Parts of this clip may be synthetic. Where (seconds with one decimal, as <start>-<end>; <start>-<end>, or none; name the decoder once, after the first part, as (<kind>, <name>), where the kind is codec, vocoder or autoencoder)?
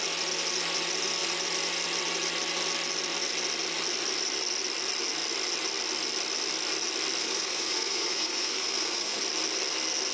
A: 7.2-9.2 (codec, SNAC)